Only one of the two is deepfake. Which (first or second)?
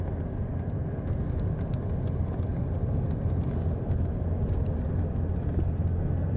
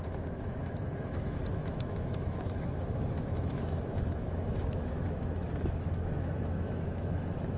second